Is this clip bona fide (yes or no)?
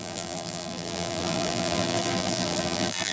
no